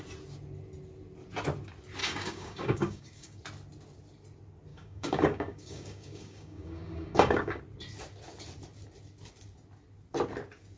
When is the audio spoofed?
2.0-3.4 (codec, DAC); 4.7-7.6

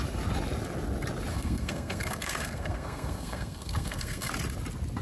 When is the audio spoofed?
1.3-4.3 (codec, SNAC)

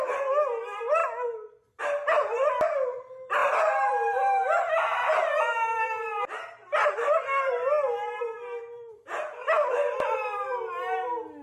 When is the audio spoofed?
none

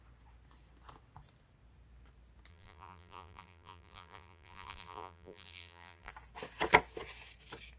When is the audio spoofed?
2.5-6.1 (vocoder, BigVGAN v2)

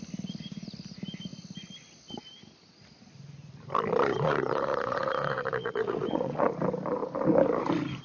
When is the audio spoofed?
4.1-6.5 (vocoder, Vocos)